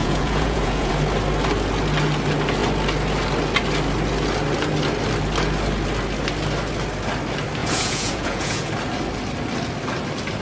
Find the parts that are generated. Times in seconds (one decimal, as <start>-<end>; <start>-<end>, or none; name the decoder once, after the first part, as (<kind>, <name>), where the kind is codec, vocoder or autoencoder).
0.0-0.9 (vocoder, Vocos); 7.6-8.7